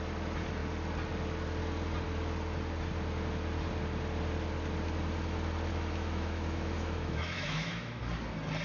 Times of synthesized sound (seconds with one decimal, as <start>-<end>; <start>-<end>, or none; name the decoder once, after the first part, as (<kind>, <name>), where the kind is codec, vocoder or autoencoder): 5.7-8.0 (autoencoder, DAC-VAE)